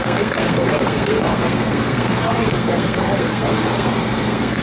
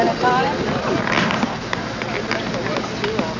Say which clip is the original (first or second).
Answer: second